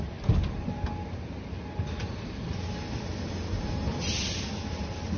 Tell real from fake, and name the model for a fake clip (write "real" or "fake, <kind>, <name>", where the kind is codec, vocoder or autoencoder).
real